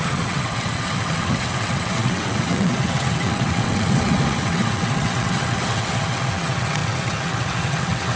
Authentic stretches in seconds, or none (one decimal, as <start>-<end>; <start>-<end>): none